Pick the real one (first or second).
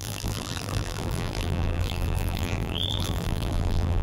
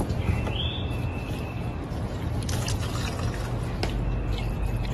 second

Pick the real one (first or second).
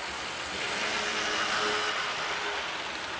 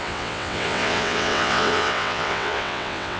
first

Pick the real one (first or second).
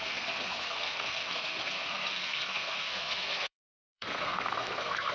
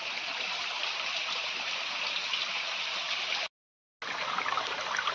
second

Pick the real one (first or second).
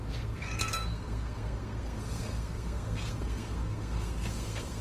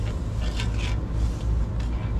second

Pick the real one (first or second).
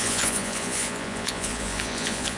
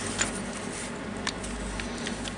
second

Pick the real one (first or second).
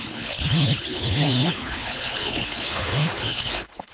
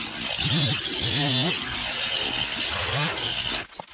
second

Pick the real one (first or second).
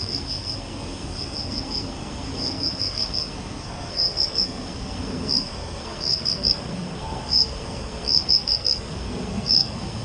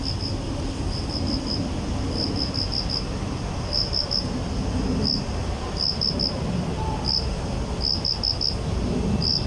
second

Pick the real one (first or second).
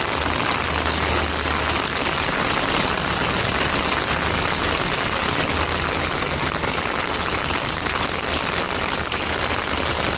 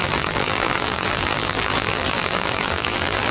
first